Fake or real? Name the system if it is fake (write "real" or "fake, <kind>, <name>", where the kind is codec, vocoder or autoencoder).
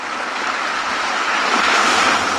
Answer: real